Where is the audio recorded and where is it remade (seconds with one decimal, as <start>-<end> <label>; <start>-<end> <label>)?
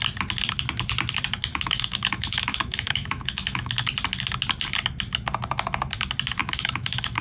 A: 0.0-1.5 recorded; 1.5-3.9 remade; 3.9-6.4 recorded; 6.4-7.2 remade